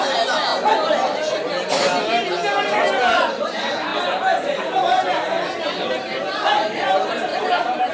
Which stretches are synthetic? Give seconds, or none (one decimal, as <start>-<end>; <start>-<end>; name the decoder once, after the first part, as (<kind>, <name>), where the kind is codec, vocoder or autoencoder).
0.0-0.5 (vocoder, BigVGAN v2); 3.0-7.9